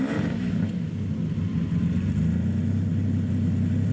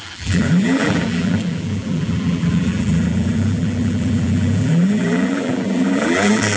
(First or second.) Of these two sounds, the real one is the first